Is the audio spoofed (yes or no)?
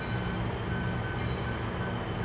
no